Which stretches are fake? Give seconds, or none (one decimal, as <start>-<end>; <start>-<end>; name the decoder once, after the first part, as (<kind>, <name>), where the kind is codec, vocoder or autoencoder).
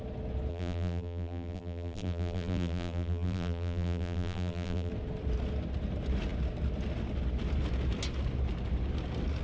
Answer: 0.5-4.9 (vocoder, BigVGAN v2)